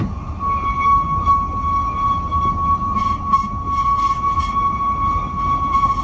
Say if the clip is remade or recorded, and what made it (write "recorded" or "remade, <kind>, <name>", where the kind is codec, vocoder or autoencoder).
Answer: recorded